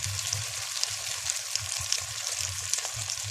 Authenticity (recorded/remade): recorded